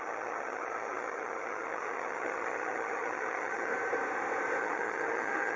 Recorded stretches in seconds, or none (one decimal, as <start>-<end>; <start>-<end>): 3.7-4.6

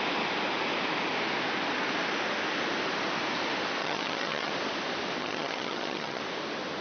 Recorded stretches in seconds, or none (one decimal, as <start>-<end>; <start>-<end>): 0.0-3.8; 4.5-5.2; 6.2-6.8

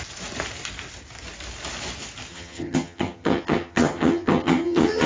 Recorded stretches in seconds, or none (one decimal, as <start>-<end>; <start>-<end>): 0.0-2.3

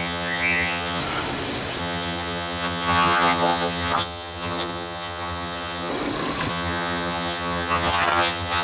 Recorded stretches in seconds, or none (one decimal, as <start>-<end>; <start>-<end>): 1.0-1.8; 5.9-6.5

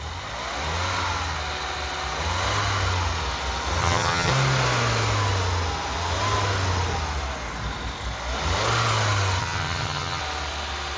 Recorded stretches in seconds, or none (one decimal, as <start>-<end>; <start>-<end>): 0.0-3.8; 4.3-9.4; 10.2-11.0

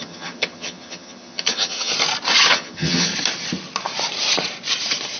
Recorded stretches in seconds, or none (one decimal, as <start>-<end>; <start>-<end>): 1.9-2.5; 3.1-5.2